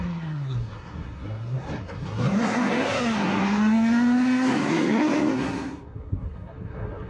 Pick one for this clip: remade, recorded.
remade